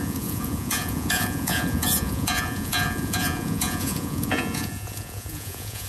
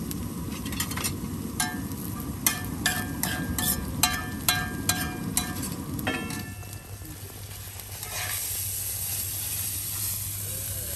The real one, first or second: second